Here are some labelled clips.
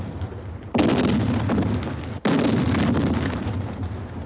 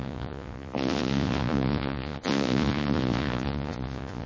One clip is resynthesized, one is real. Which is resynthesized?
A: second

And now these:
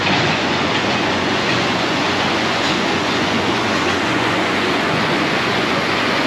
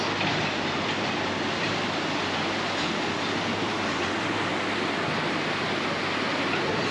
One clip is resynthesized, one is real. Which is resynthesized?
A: first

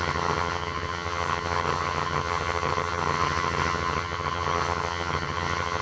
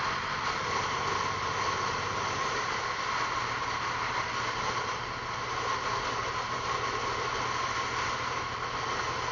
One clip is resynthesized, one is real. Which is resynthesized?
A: first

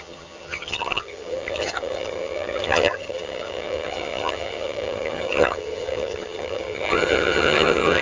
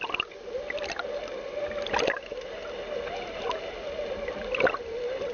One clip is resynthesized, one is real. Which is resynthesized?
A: first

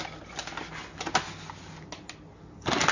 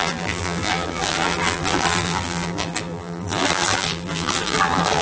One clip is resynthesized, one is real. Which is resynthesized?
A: second